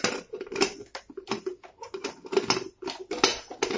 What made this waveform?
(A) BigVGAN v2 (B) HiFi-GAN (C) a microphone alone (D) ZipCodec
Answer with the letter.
C